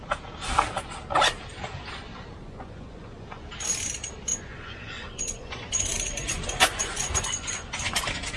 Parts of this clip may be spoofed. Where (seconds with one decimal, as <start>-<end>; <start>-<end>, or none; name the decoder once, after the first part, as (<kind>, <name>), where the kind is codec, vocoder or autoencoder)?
2.4-3.5 (vocoder, Vocos); 4.3-8.0